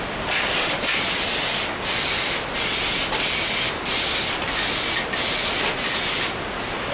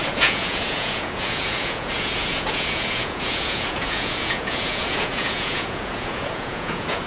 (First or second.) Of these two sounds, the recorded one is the first